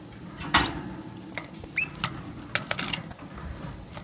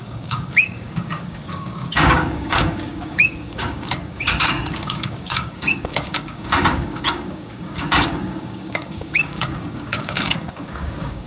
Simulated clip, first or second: second